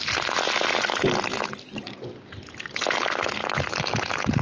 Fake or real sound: real